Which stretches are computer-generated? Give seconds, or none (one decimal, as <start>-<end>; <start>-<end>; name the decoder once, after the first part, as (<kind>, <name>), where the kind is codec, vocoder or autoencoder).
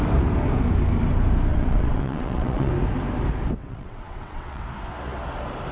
1.5-2.7 (vocoder, WaveNeXt); 3.6-4.6